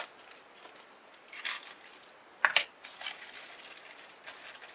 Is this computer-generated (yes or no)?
no